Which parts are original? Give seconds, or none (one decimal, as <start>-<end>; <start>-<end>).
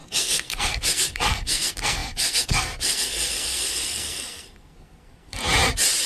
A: 5.4-6.1